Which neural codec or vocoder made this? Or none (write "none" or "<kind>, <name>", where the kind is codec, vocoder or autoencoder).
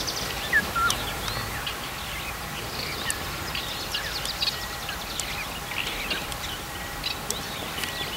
none